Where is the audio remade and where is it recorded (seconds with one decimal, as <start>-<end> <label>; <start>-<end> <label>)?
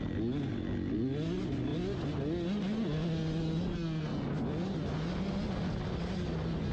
0.0-6.7 recorded